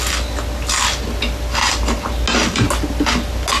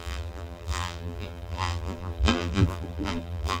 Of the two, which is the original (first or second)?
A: first